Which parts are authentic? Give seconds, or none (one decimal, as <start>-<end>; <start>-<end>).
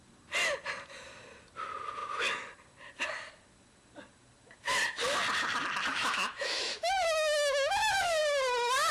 0.0-5.9; 8.2-8.9